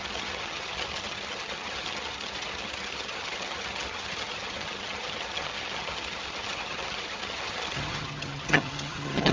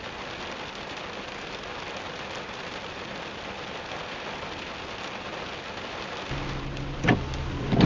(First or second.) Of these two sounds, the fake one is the first